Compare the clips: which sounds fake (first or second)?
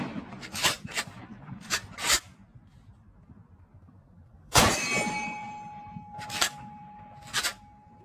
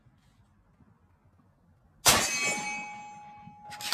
first